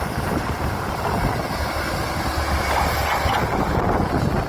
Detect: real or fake real